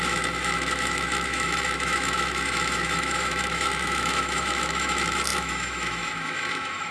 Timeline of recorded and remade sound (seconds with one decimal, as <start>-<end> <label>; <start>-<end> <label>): 0.0-6.9 remade